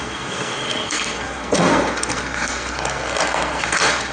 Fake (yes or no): yes